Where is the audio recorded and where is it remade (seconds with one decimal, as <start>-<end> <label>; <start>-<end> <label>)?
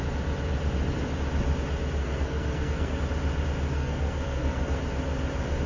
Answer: 0.0-2.0 recorded; 2.0-3.0 remade; 3.0-3.7 recorded; 3.7-4.8 remade; 4.8-5.7 recorded